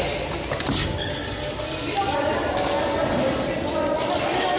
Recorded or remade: recorded